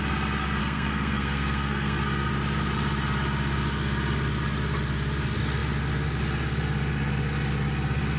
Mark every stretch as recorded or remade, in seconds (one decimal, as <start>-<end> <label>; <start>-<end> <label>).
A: 0.0-0.6 recorded; 0.6-2.3 remade; 2.3-8.2 recorded

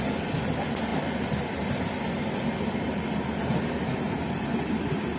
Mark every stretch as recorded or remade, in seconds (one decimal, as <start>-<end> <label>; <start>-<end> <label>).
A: 0.0-5.2 recorded

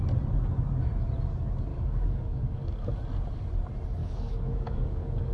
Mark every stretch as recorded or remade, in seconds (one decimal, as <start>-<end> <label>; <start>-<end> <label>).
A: 0.0-1.7 recorded; 1.7-2.9 remade; 2.9-4.0 recorded; 4.0-5.3 remade

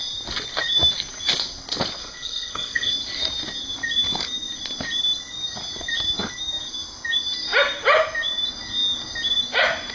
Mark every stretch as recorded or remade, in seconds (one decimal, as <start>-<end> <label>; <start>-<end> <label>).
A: 0.0-2.0 recorded; 2.0-2.9 remade; 2.9-9.9 recorded

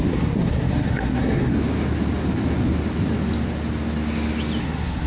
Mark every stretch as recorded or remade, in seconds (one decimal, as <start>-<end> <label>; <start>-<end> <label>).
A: 0.0-1.5 remade; 1.5-4.6 recorded; 4.6-5.1 remade